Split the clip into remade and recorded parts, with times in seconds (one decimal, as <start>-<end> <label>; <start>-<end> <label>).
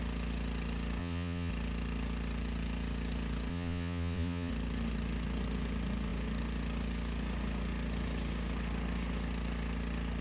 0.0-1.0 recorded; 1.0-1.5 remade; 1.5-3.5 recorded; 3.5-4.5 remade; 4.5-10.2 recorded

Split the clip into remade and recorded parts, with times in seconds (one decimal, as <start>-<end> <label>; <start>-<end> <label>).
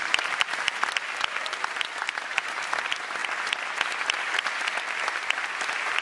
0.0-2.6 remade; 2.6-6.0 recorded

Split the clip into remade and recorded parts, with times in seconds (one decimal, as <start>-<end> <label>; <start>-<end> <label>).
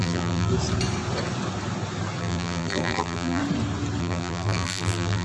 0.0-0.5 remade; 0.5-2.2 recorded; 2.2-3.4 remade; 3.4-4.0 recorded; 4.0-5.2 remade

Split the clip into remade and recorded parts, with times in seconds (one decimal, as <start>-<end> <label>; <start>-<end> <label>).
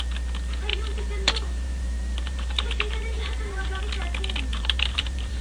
0.0-0.7 recorded; 0.7-3.8 remade; 3.8-4.5 recorded; 4.5-5.4 remade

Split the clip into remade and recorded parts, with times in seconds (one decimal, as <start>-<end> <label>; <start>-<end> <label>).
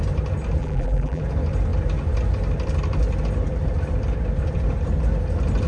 0.0-0.6 recorded; 0.6-1.2 remade; 1.2-5.7 recorded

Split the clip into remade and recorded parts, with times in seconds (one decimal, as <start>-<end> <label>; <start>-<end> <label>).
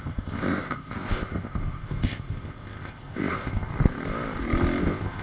0.0-3.7 remade; 3.7-4.8 recorded; 4.8-5.2 remade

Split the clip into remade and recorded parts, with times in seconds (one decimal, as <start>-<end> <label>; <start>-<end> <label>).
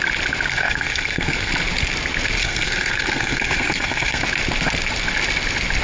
0.0-0.5 recorded; 0.5-1.5 remade; 1.5-2.4 recorded; 2.4-4.2 remade; 4.2-5.8 recorded